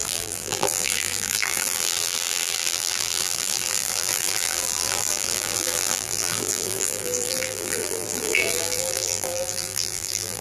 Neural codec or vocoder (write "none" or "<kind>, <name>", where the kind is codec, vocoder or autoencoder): vocoder, BigVGAN v2